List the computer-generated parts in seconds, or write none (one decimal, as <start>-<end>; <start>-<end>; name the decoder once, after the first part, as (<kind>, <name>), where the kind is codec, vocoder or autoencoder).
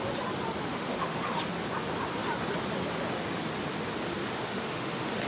0.7-1.4 (autoencoder, DAC-VAE); 4.2-5.3